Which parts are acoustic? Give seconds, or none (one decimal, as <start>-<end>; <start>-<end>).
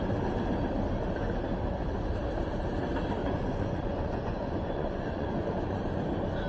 0.0-3.2; 6.0-6.5